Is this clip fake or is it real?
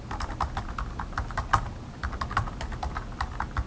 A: real